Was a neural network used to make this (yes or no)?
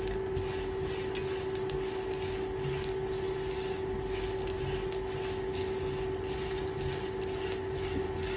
no